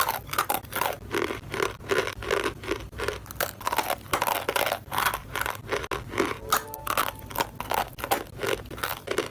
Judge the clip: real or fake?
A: real